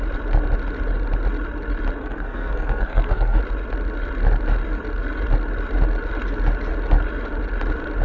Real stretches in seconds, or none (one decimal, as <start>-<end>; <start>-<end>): 0.0-2.0; 3.4-8.0